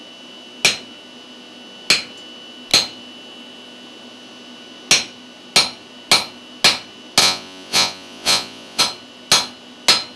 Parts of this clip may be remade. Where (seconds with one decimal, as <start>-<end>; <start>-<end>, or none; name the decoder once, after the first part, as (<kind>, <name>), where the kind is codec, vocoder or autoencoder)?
7.2-8.8 (vocoder, Vocos)